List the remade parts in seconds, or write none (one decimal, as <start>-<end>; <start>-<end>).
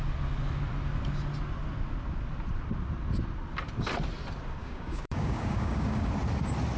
4.6-6.1